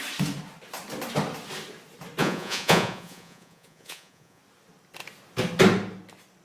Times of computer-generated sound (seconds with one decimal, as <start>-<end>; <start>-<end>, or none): 2.2-4.4